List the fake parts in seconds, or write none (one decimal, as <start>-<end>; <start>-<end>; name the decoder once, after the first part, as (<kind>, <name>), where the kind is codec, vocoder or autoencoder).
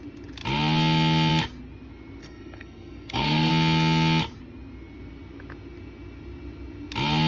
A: 2.2-3.5 (codec, SNAC)